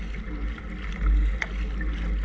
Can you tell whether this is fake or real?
real